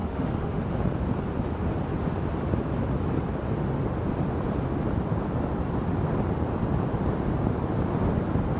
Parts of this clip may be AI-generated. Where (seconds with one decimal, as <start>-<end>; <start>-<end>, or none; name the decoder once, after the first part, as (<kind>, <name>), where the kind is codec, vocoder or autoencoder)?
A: 0.0-0.6 (autoencoder, DAC-VAE)